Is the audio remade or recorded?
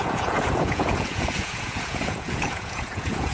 remade